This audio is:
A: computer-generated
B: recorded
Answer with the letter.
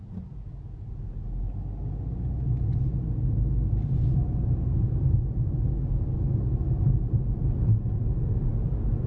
B